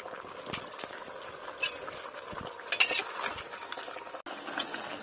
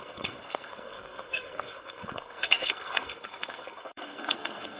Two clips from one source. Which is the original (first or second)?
first